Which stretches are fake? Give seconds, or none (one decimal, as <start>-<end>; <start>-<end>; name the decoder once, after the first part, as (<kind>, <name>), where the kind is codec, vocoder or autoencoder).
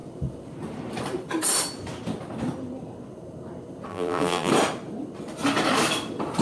3.9-4.5 (vocoder, BigVGAN v2)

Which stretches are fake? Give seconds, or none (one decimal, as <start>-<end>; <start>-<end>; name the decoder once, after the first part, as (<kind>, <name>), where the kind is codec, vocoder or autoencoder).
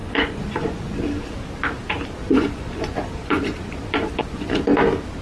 0.0-0.9 (vocoder, Vocos); 2.2-4.6